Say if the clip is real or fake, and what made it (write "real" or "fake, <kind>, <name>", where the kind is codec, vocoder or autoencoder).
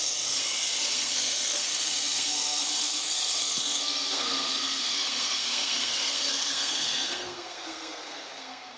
fake, codec, SNAC